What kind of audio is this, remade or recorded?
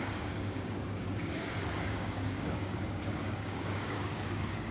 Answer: remade